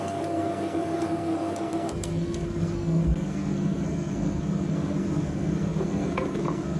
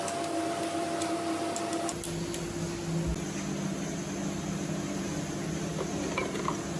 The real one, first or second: second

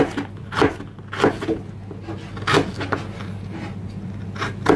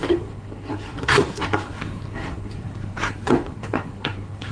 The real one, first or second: first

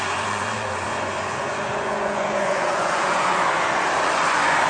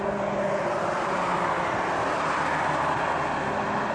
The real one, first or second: second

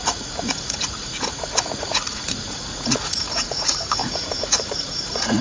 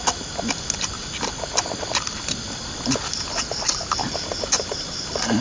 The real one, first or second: second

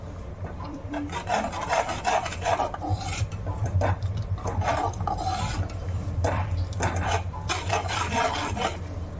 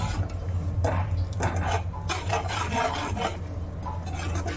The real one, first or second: second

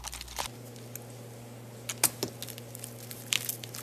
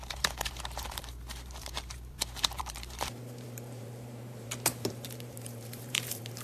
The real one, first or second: first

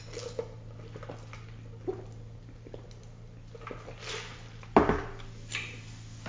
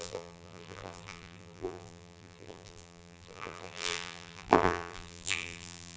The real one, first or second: first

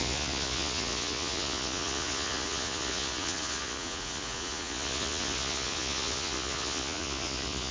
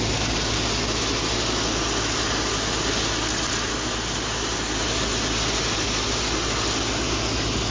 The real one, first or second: second